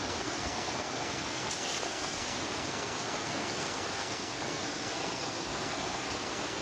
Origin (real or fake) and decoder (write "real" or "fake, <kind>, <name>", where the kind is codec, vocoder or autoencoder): fake, codec, SNAC